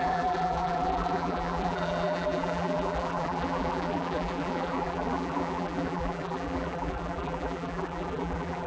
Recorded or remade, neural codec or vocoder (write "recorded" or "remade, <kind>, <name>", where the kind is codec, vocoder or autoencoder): remade, vocoder, BigVGAN v2